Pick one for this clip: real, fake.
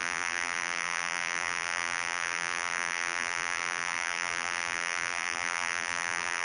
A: fake